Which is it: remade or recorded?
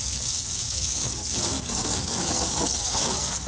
remade